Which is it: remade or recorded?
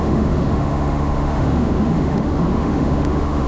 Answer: remade